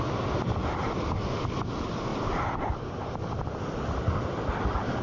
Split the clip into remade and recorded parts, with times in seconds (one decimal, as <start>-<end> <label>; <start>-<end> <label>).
0.0-5.0 recorded